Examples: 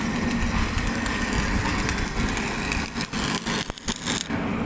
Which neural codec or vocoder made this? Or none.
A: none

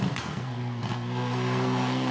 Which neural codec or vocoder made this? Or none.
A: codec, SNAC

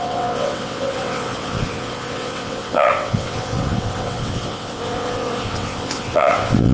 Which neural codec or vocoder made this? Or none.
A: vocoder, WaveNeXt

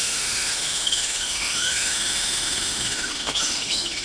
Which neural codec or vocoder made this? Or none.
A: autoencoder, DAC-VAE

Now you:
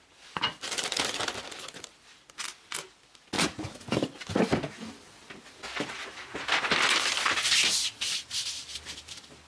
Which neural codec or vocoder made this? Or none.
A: vocoder, BigVGAN v2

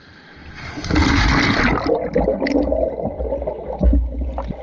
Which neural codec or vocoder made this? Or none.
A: none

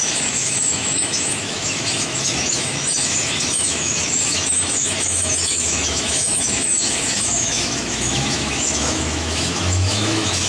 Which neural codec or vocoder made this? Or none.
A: autoencoder, DAC-VAE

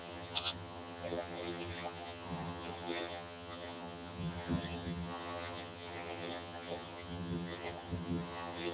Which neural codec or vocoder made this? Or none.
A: vocoder, HiFi-GAN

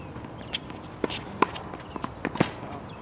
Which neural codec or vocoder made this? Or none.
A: none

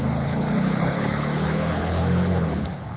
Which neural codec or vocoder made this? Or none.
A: codec, HILCodec